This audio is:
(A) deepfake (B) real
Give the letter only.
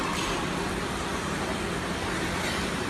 B